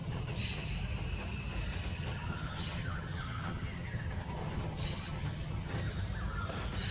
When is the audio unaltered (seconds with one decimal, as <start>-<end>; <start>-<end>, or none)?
0.7-1.9; 6.0-6.9